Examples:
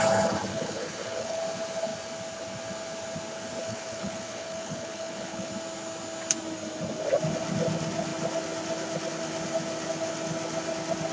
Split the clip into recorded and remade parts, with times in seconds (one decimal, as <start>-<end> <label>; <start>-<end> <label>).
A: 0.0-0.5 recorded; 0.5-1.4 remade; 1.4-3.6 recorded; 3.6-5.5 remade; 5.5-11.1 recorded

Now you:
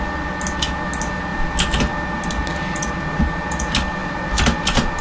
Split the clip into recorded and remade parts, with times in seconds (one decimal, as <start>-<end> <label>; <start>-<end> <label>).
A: 0.0-4.0 recorded; 4.0-5.0 remade

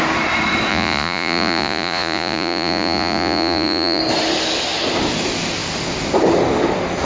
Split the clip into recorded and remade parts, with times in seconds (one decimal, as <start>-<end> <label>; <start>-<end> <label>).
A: 0.0-0.7 recorded; 0.7-4.0 remade; 4.0-7.1 recorded